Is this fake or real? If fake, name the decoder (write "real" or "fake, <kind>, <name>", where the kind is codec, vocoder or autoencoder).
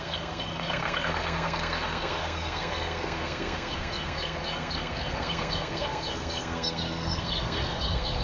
fake, codec, SNAC